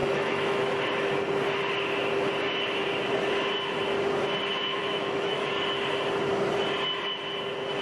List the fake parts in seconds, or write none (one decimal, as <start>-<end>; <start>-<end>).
0.0-0.8; 4.8-5.5